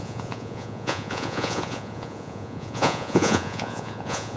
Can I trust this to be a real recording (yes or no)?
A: no